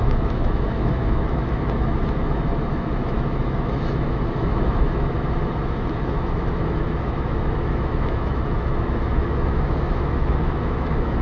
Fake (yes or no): yes